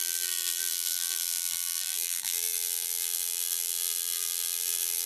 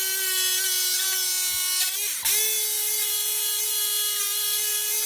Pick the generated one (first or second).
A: first